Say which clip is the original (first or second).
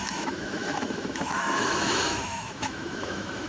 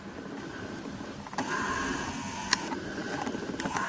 second